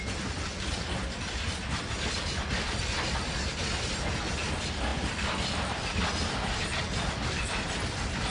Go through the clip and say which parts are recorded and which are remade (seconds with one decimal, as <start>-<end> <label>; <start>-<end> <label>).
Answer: 0.0-4.9 recorded; 4.9-6.1 remade; 6.1-8.3 recorded